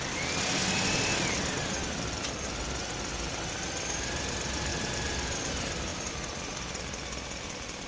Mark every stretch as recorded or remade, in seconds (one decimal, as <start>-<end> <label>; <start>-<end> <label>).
0.0-7.9 recorded